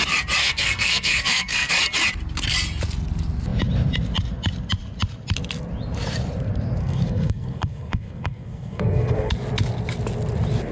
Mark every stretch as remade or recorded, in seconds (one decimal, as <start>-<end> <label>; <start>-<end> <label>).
0.0-0.4 recorded; 0.4-1.7 remade; 1.7-6.8 recorded; 6.8-9.3 remade; 9.3-10.7 recorded